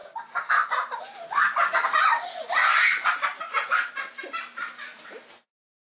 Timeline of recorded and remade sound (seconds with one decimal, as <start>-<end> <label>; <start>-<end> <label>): 0.0-5.8 recorded